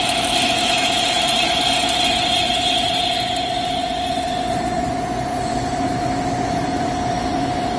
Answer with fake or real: real